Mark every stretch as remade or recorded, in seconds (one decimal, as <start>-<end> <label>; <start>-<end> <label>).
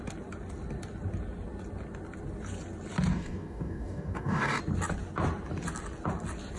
0.0-3.1 recorded; 3.1-4.6 remade; 4.6-6.6 recorded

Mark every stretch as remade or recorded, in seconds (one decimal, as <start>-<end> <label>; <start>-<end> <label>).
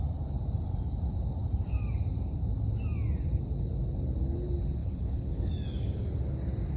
0.0-4.8 recorded; 4.8-5.5 remade; 5.5-6.8 recorded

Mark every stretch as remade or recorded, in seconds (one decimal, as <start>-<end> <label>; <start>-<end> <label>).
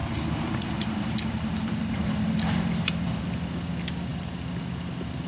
0.0-3.2 remade; 3.2-5.3 recorded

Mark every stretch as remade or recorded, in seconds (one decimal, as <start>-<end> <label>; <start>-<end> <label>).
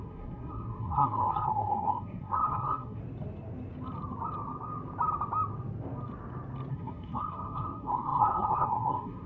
0.0-3.0 remade; 3.0-6.7 recorded; 6.7-9.3 remade